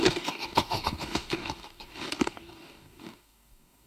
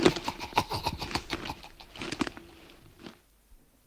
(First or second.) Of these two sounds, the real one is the second